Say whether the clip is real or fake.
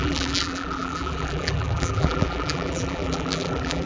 fake